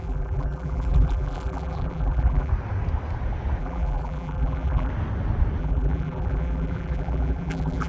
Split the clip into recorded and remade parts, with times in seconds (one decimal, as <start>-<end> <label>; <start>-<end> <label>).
0.0-2.5 remade; 2.5-3.6 recorded; 3.6-4.9 remade; 4.9-5.6 recorded; 5.6-7.9 remade